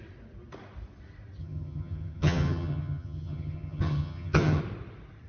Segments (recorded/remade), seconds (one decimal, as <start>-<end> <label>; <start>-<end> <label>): 0.0-1.4 recorded; 1.4-4.6 remade; 4.6-5.3 recorded